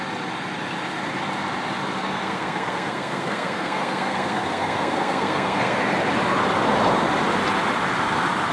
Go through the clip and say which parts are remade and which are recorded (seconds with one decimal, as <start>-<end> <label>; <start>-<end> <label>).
0.0-2.0 recorded; 2.0-5.8 remade; 5.8-8.5 recorded